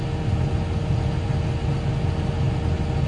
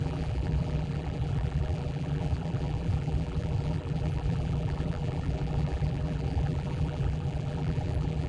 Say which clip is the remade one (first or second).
second